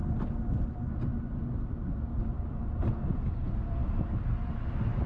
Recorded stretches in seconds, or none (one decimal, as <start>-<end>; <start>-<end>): 0.0-5.1